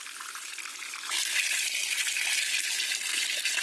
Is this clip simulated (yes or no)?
yes